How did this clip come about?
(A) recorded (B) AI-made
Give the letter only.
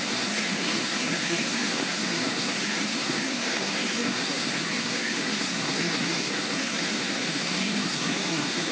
B